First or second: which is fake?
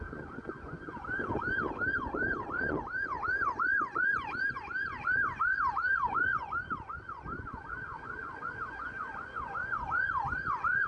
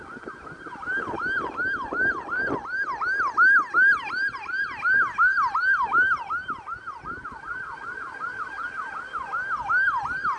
first